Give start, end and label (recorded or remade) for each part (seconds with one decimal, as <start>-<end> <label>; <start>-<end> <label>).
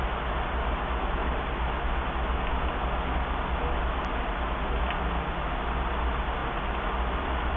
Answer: 0.0-7.6 recorded